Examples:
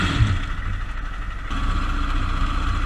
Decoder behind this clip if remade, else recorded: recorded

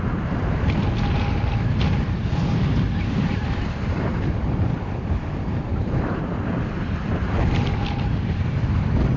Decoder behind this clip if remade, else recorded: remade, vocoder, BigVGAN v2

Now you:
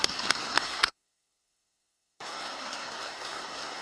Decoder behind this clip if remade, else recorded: remade, codec, SNAC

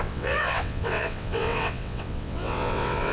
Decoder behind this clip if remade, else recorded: remade, vocoder, WaveNeXt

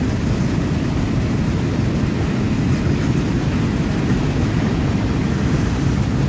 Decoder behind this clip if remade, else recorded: recorded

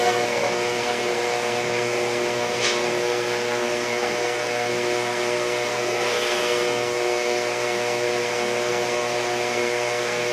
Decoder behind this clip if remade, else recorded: remade, codec, SNAC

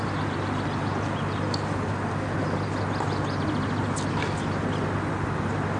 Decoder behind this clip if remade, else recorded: recorded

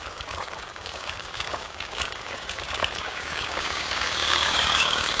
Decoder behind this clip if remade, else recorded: remade, codec, DAC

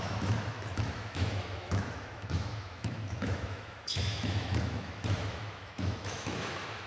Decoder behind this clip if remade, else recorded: remade, autoencoder, DAC-VAE